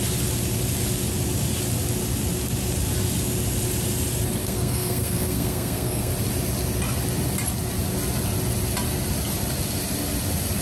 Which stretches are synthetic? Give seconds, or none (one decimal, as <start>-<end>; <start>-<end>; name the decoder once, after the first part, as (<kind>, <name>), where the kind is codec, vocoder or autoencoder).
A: 4.4-6.1 (codec, SNAC)